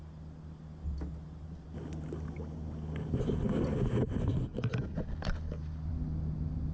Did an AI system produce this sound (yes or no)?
no